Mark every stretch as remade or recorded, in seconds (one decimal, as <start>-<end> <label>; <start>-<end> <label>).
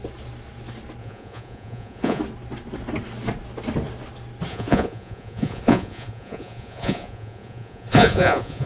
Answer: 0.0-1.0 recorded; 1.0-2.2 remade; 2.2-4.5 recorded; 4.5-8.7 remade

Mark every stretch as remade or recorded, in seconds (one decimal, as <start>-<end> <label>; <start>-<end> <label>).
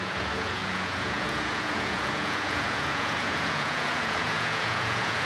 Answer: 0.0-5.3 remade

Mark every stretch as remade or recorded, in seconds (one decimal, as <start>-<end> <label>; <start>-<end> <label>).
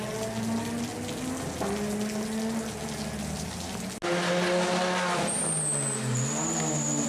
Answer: 0.0-7.1 recorded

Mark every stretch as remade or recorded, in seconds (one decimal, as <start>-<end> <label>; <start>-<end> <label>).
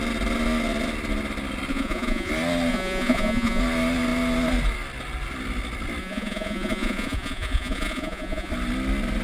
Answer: 0.0-1.7 recorded; 1.7-2.3 remade; 2.3-2.7 recorded; 2.7-3.6 remade; 3.6-6.0 recorded; 6.0-8.5 remade; 8.5-9.2 recorded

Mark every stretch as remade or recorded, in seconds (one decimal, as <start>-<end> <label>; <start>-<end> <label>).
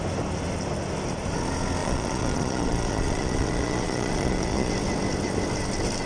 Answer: 0.0-1.8 recorded; 1.8-4.7 remade; 4.7-6.1 recorded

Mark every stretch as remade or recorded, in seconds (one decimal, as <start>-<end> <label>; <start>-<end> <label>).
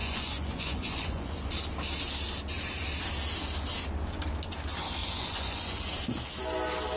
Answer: 0.0-1.5 remade; 1.5-5.0 recorded; 5.0-5.8 remade; 5.8-7.0 recorded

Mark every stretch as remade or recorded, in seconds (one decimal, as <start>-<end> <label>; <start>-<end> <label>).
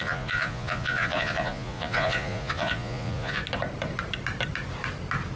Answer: 0.0-3.4 remade; 3.4-5.4 recorded